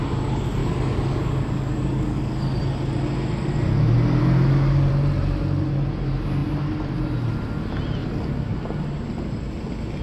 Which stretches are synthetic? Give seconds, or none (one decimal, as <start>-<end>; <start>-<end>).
0.6-2.6; 4.2-4.9